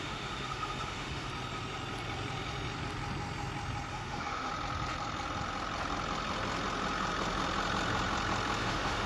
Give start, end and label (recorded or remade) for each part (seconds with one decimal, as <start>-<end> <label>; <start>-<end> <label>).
0.0-1.3 remade; 1.3-3.9 recorded; 3.9-4.5 remade; 4.5-8.6 recorded; 8.6-9.1 remade